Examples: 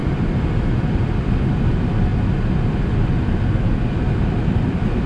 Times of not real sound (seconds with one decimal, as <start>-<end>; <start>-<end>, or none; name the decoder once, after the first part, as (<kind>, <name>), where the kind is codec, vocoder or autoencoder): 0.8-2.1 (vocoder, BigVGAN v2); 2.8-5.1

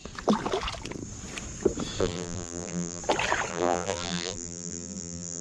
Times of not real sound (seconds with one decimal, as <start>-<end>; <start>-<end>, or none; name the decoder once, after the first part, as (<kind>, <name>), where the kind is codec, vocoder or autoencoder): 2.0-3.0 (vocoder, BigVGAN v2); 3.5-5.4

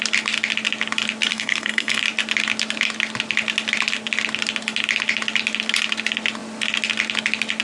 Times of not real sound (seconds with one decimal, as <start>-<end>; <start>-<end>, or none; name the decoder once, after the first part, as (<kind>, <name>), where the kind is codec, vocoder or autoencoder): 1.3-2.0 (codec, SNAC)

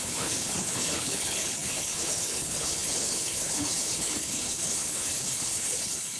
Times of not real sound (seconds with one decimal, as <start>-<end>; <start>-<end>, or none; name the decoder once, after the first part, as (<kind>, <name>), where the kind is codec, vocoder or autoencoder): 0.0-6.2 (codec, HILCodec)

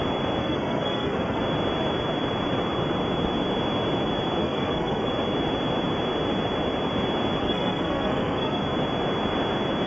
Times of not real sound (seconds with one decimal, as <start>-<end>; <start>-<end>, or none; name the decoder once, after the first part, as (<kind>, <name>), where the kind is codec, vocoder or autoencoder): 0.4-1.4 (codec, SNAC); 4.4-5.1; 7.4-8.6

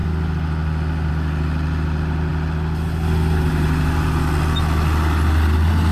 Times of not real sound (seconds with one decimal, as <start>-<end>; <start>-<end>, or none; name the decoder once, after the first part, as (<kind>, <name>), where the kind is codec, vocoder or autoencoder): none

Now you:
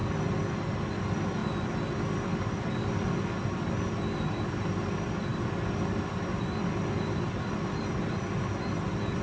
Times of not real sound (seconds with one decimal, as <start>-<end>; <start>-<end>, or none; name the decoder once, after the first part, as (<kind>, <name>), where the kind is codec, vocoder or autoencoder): none